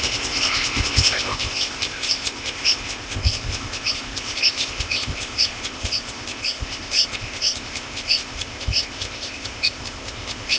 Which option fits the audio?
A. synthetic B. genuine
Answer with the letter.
A